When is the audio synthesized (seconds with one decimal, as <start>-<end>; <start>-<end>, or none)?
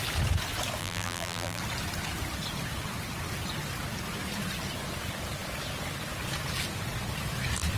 0.8-1.6